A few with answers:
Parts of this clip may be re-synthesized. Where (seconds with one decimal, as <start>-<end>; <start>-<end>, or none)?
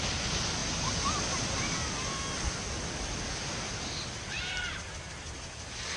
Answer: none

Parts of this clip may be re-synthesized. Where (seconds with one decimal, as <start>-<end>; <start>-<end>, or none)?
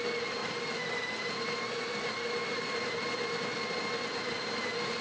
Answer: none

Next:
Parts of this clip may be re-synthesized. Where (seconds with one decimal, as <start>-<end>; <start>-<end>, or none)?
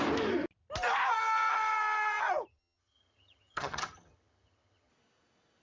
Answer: 2.5-4.9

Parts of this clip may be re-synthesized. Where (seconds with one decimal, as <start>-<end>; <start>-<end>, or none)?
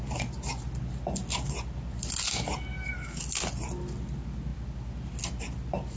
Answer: none